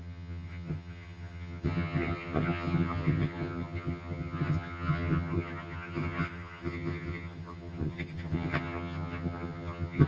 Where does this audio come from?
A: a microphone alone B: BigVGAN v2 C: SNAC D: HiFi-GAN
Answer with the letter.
D